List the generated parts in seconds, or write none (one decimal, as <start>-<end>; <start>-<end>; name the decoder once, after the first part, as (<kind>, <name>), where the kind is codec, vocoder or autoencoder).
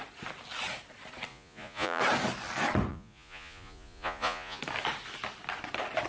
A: 1.3-2.0 (vocoder, Vocos); 2.9-4.6